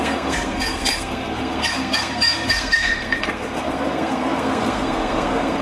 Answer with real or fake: fake